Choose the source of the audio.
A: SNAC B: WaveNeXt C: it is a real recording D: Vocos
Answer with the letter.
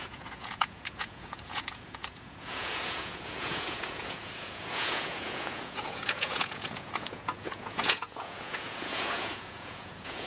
D